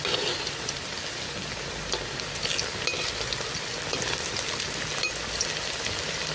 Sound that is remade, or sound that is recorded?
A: recorded